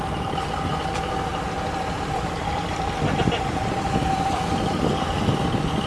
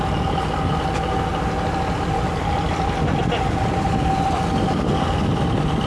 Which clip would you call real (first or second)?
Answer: second